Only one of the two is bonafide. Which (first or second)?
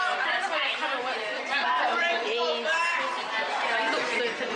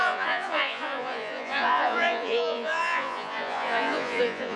first